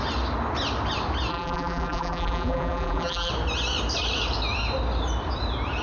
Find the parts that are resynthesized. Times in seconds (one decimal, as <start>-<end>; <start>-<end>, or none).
1.3-3.3

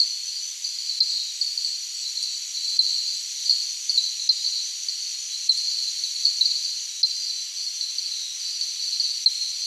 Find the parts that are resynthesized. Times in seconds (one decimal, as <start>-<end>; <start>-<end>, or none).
2.0-4.0; 5.1-6.7

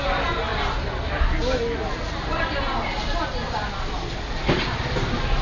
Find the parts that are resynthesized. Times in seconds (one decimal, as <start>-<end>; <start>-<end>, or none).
none

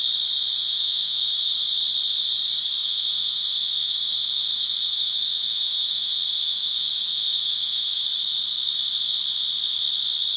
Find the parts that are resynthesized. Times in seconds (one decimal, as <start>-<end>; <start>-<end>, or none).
0.7-1.5; 2.8-8.0